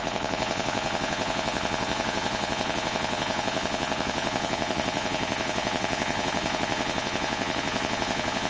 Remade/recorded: remade